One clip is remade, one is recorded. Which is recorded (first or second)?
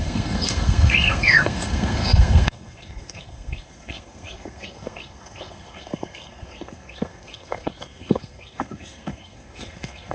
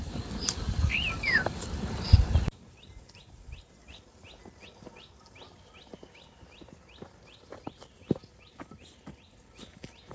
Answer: second